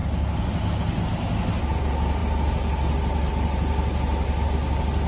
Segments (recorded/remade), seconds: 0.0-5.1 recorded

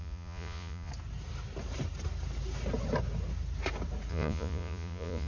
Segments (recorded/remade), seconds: 0.0-0.9 remade; 0.9-4.1 recorded; 4.1-5.3 remade

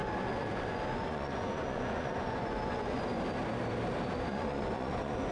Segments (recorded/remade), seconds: 0.0-3.0 remade; 3.0-4.3 recorded; 4.3-5.3 remade

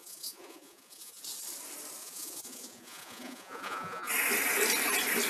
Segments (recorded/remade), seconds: 0.0-1.2 remade; 1.2-2.0 recorded; 2.0-4.1 remade; 4.1-5.3 recorded

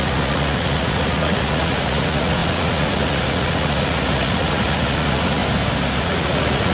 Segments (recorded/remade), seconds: 0.0-5.4 remade; 5.4-6.0 recorded; 6.0-6.7 remade

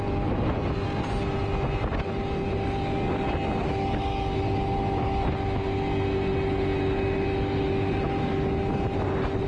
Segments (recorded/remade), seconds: 0.0-9.5 recorded